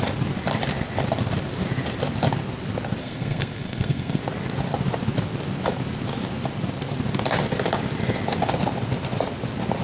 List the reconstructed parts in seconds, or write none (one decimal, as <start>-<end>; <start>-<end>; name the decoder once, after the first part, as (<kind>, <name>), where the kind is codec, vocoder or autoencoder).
3.0-4.2 (codec, SNAC)